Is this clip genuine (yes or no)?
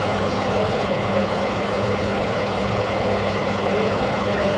no